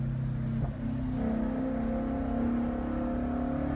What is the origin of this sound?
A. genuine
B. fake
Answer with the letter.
A